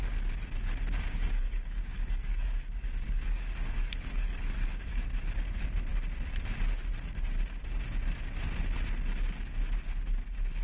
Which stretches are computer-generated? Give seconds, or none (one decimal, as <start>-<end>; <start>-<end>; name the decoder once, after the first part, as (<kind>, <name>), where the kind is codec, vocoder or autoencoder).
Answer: 1.2-5.0 (codec, DAC)

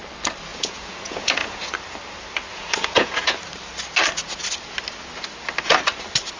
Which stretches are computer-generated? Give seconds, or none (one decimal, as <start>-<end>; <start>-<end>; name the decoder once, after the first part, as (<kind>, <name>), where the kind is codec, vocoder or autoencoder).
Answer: 0.5-1.6 (vocoder, Vocos); 2.5-3.4

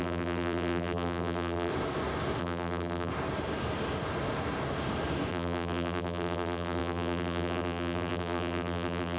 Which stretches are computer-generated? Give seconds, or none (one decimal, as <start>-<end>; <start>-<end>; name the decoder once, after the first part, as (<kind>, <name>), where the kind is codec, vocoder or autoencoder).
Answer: 0.0-1.7 (vocoder, BigVGAN v2); 2.4-3.1; 5.3-9.2

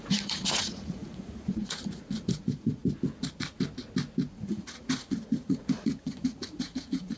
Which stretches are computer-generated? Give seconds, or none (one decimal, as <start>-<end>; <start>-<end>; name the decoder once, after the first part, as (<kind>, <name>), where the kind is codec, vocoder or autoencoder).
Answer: 0.0-2.8 (vocoder, Vocos); 4.3-7.2

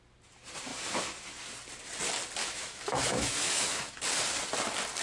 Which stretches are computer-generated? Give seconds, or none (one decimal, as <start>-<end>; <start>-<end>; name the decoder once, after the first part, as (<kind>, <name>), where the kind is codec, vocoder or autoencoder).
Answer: 2.4-4.0 (autoencoder, DAC-VAE)

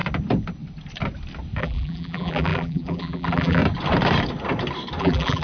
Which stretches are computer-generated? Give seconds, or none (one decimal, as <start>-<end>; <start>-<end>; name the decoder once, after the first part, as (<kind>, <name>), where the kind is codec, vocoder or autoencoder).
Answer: 1.6-3.6 (vocoder, BigVGAN v2); 5.0-5.4

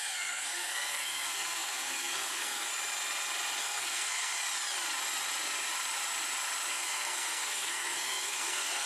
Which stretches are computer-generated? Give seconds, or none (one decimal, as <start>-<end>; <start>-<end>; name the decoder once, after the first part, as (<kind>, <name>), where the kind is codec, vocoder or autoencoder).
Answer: 0.0-2.7 (codec, SNAC); 3.6-4.3; 6.7-8.9